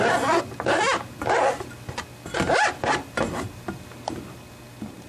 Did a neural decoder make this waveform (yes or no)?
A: no